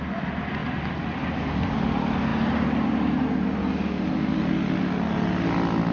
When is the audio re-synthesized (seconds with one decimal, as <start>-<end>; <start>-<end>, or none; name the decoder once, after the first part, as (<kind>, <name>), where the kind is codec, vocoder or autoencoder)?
0.6-1.4 (vocoder, BigVGAN v2)